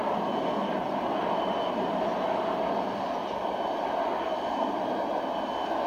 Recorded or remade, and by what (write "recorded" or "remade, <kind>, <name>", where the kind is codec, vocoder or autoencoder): recorded